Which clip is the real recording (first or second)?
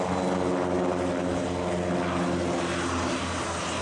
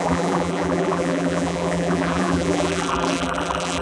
first